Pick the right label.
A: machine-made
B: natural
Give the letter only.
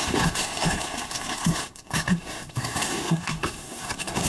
A